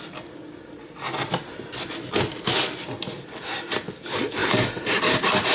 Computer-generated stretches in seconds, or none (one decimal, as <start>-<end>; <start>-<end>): none